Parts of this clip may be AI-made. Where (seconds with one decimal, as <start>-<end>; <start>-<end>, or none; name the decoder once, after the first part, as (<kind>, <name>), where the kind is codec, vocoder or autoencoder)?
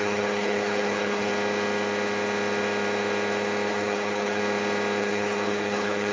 0.0-1.3 (codec, HILCodec); 3.7-4.4; 5.0-6.1